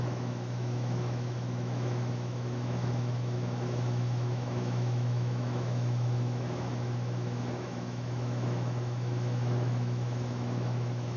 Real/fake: fake